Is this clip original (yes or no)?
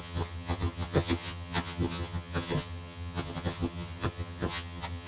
no